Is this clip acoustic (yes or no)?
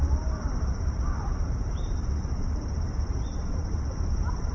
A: no